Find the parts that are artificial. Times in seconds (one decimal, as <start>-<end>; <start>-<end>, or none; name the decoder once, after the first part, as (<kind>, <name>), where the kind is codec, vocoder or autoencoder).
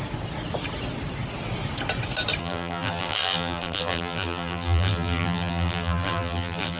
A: 2.4-6.8 (vocoder, BigVGAN v2)